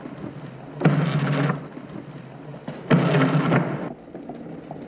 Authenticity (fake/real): real